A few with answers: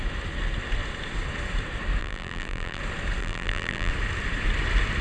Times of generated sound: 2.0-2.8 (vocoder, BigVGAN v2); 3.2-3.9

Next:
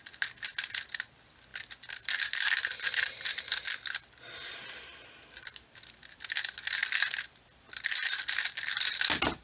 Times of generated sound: 6.8-7.6 (vocoder, BigVGAN v2)

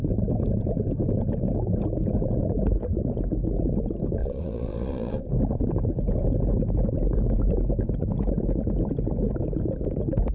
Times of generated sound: 4.2-5.2 (vocoder, Vocos)

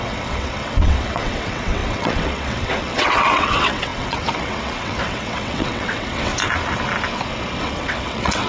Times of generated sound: 0.0-6.3 (vocoder, WaveNeXt); 7.6-8.5

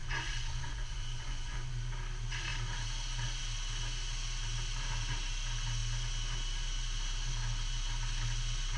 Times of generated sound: 0.0-1.7 (vocoder, Vocos)

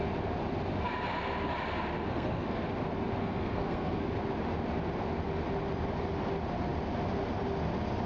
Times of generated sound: 2.1-2.7 (codec, SNAC); 3.2-4.1

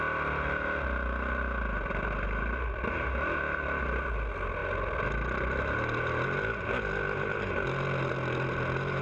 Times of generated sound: none